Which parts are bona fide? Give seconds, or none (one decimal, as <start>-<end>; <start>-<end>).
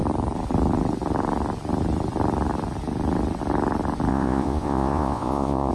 0.0-4.1